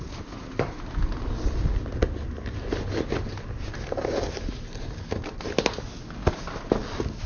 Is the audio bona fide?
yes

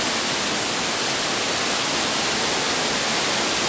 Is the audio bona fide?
yes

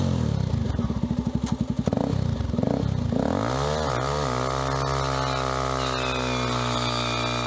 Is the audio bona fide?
yes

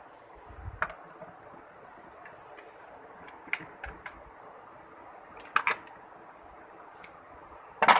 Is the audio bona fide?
yes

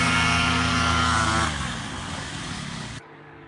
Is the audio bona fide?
no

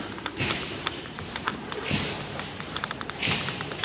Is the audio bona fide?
no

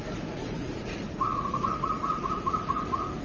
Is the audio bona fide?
no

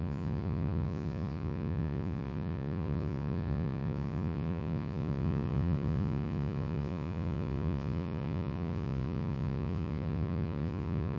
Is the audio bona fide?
no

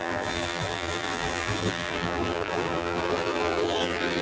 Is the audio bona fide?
no